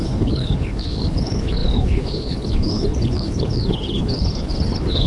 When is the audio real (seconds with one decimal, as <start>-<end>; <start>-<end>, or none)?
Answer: none